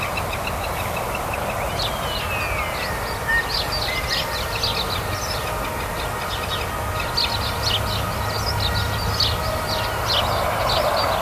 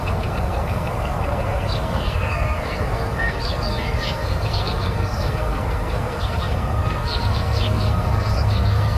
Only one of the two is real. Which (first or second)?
first